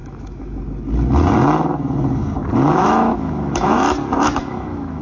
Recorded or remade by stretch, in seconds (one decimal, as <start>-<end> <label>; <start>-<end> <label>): 0.0-0.6 remade; 0.6-2.7 recorded; 2.7-3.8 remade; 3.8-4.4 recorded; 4.4-5.0 remade